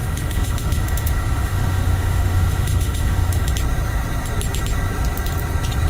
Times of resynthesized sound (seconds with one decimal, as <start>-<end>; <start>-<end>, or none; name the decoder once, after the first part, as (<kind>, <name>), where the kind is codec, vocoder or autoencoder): 0.0-3.5 (autoencoder, DAC-VAE)